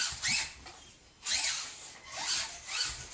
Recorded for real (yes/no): yes